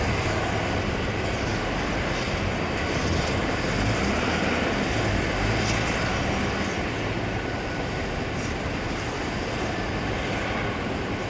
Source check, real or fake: real